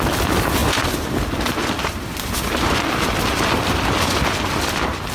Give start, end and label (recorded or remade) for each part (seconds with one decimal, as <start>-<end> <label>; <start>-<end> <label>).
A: 0.0-5.1 recorded